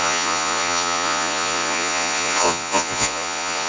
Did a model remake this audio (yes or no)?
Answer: yes